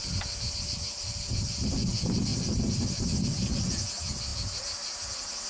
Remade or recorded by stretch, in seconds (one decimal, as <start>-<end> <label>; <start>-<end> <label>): 0.0-1.0 remade; 1.0-5.5 recorded

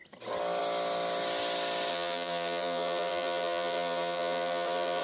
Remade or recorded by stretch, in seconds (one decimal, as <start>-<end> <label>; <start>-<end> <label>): 0.0-1.9 recorded; 1.9-5.0 remade

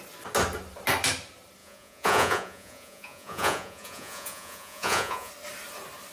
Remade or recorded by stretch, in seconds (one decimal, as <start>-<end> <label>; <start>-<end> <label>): 0.0-1.6 recorded; 1.6-5.3 remade; 5.3-6.1 recorded

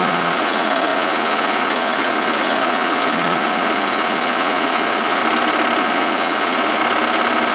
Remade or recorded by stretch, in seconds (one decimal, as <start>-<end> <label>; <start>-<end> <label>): 0.0-5.2 remade; 5.2-5.8 recorded; 5.8-6.8 remade; 6.8-7.5 recorded

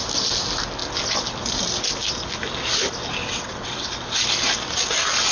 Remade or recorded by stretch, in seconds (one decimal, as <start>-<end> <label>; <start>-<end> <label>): 0.0-3.2 recorded; 3.2-3.9 remade; 3.9-5.3 recorded